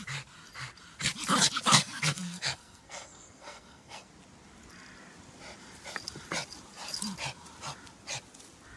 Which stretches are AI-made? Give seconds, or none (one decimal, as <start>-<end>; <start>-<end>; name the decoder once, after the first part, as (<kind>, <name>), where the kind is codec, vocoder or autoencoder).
1.7-4.1 (codec, SNAC)